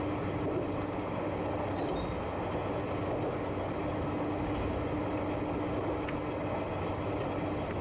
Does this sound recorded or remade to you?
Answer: recorded